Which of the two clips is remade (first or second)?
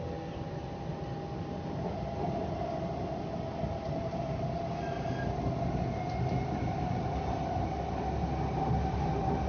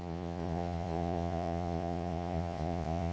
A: second